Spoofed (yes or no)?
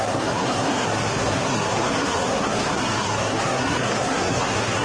yes